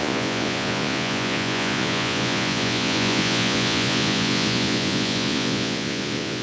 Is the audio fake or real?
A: fake